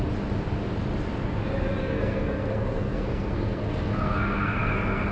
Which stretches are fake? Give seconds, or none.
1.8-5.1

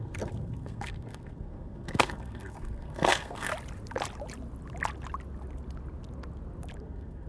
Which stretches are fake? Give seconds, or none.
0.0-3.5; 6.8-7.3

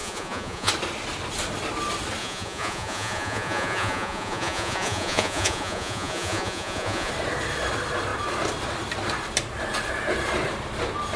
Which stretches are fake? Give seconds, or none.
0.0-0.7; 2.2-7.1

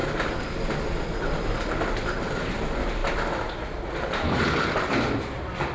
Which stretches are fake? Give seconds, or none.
none

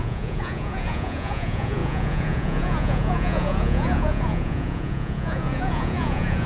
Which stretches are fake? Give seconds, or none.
0.0-6.5

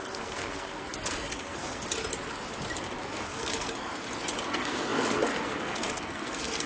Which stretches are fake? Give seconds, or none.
0.0-1.8; 3.0-3.9; 4.5-6.7

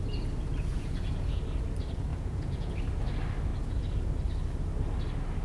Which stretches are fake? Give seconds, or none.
0.7-1.4; 2.1-2.8